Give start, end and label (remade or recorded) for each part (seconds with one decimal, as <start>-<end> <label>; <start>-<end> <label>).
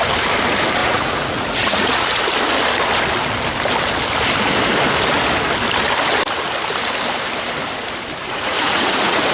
0.0-0.8 recorded; 0.8-2.2 remade; 2.2-8.2 recorded; 8.2-9.3 remade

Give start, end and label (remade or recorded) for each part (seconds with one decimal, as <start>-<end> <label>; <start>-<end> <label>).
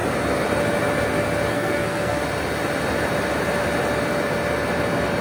0.0-1.5 recorded; 1.5-2.2 remade; 2.2-5.2 recorded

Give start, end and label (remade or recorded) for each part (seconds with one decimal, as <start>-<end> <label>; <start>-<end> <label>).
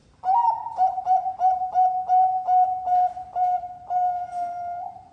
0.0-5.1 remade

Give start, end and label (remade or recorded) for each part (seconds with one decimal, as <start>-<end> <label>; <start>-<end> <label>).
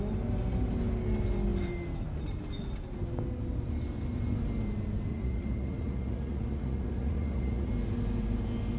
0.0-5.1 recorded; 5.1-7.7 remade; 7.7-8.8 recorded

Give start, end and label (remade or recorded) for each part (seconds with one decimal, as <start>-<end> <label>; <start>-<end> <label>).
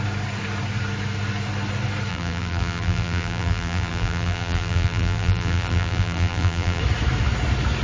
0.0-2.1 recorded; 2.1-6.8 remade; 6.8-7.8 recorded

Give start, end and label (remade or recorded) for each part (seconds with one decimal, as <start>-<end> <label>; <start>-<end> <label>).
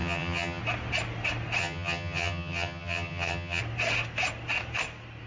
0.0-0.6 remade; 0.6-1.6 recorded; 1.6-3.6 remade; 3.6-5.3 recorded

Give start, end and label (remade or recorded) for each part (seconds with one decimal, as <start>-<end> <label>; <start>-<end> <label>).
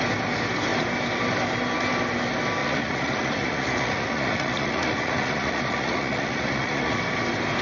0.0-2.6 recorded; 2.6-7.0 remade; 7.0-7.6 recorded